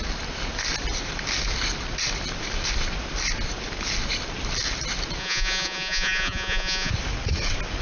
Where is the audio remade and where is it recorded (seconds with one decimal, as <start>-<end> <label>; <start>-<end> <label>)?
0.0-5.2 recorded; 5.2-6.9 remade; 6.9-7.8 recorded